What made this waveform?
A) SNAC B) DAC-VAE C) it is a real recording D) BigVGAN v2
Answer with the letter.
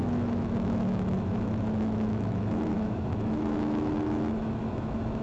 B